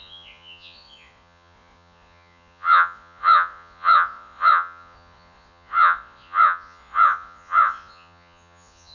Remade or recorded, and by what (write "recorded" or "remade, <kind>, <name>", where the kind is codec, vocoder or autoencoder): remade, vocoder, Vocos